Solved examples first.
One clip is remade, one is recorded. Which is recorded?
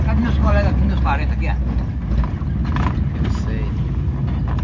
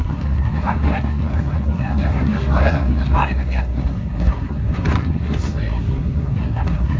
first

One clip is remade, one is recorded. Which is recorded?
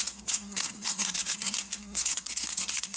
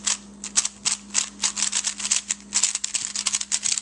second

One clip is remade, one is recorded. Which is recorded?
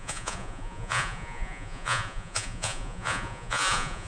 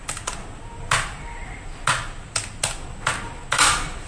second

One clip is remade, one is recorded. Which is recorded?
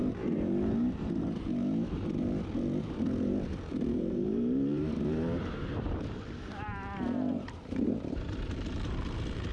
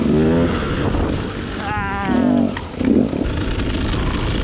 second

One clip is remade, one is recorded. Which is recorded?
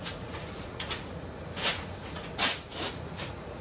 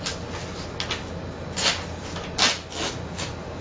second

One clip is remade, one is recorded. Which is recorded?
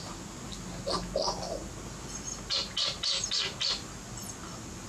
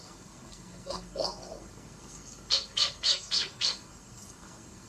first